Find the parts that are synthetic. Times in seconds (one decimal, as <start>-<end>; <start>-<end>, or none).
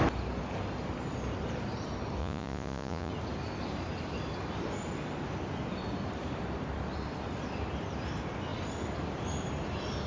2.2-3.1